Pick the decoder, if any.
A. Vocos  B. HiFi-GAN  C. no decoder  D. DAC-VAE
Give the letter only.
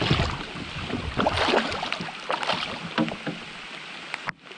C